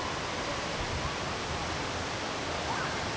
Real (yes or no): yes